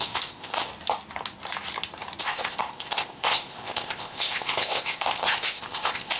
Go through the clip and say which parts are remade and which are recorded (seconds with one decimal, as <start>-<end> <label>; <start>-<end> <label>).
0.0-0.7 remade; 0.7-2.2 recorded; 2.2-6.2 remade